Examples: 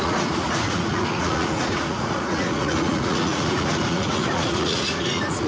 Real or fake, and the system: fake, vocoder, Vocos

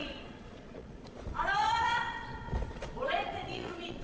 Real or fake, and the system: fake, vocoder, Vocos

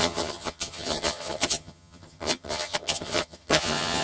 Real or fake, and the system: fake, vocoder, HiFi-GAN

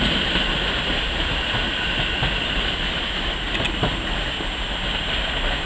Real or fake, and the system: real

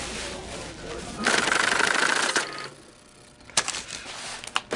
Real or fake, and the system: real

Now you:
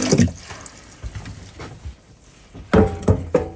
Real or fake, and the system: real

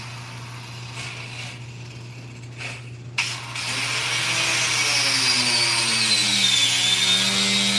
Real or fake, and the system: real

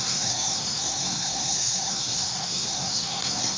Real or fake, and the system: fake, codec, SNAC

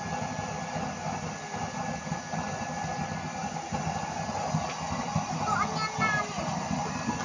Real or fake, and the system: real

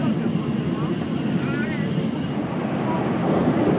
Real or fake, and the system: real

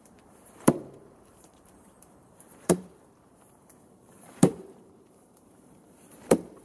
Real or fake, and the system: fake, vocoder, BigVGAN v2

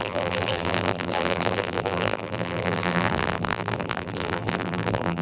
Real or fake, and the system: fake, vocoder, BigVGAN v2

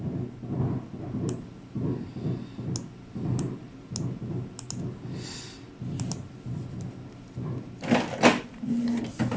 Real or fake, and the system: real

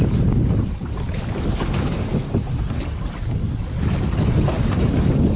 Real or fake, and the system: real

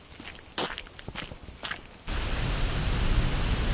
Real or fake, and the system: real